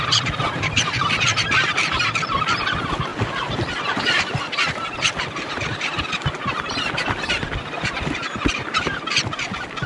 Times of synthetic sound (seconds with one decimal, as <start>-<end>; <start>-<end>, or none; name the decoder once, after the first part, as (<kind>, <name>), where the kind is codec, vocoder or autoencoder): 3.1-6.1 (vocoder, BigVGAN v2)